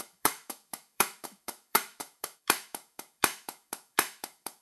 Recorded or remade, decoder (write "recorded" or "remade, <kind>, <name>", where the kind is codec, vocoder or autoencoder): remade, autoencoder, DAC-VAE